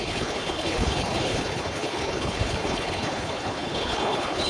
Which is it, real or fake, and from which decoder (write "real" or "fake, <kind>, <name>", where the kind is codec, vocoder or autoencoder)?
fake, codec, HILCodec